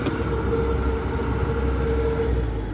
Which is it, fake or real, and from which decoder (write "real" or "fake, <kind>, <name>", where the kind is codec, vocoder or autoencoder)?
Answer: real